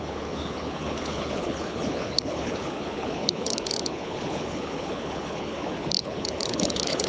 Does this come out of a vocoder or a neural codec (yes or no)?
yes